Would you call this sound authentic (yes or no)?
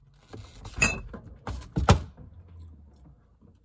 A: yes